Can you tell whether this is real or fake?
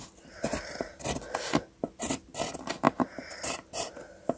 real